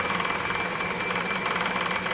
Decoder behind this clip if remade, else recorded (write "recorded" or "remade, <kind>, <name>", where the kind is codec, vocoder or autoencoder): recorded